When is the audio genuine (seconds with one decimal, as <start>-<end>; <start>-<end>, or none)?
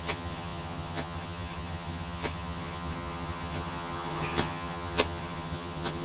none